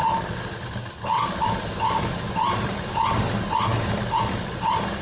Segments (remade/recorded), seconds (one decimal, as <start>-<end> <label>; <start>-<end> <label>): 0.0-5.0 recorded